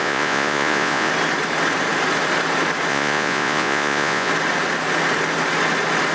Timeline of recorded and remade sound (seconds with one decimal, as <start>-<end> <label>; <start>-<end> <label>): 0.0-1.1 remade; 1.1-2.9 recorded; 2.9-4.3 remade; 4.3-6.1 recorded